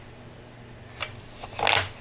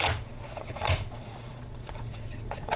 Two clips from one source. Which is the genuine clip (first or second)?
first